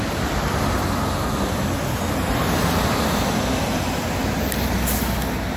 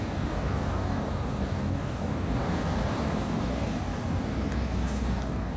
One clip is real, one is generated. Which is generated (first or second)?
second